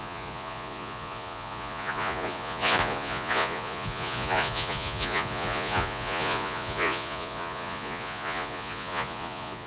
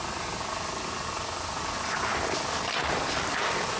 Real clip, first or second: second